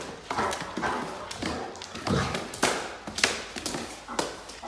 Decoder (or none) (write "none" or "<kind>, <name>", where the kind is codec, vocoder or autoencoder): none